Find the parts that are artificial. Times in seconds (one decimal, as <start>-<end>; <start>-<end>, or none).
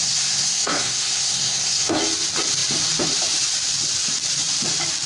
0.0-2.0